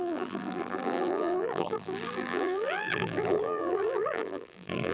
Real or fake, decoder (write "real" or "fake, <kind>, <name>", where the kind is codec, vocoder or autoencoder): fake, vocoder, BigVGAN v2